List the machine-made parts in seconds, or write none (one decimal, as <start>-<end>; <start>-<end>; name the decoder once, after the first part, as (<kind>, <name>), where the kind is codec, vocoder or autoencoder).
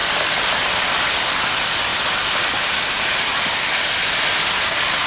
none